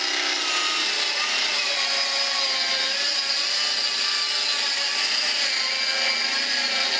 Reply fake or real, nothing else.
real